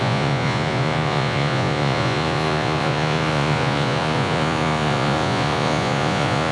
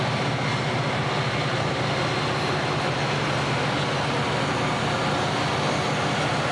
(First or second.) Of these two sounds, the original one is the second